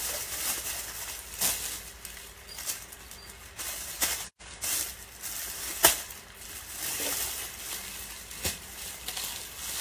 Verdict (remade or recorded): recorded